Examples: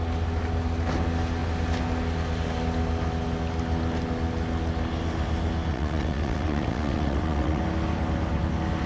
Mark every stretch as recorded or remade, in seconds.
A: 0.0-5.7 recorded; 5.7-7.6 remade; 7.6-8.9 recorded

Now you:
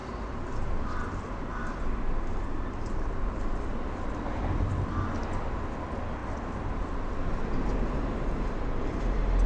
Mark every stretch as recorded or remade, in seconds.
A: 0.0-9.5 recorded

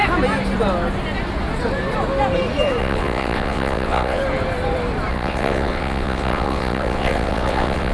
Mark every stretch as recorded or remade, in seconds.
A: 0.0-2.8 recorded; 2.8-4.2 remade; 4.2-5.1 recorded; 5.1-7.9 remade

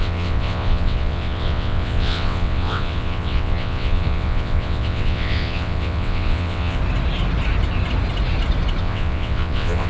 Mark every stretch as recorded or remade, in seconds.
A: 0.0-6.8 remade; 6.8-8.8 recorded; 8.8-9.9 remade

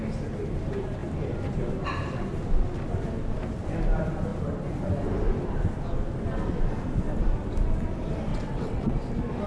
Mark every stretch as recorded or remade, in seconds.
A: 0.0-8.3 recorded; 8.3-8.9 remade; 8.9-9.5 recorded

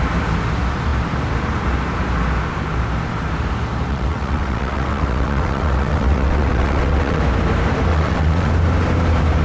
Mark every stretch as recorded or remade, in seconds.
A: 0.0-3.9 recorded; 3.9-7.2 remade; 7.2-7.9 recorded; 7.9-8.5 remade; 8.5-9.4 recorded

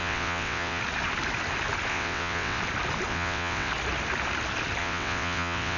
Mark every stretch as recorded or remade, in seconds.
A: 0.0-0.8 remade; 0.8-1.9 recorded; 1.9-2.6 remade; 2.6-3.1 recorded; 3.1-3.7 remade; 3.7-4.8 recorded; 4.8-5.8 remade